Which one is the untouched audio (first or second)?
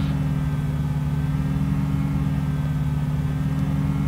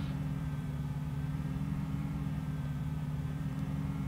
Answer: first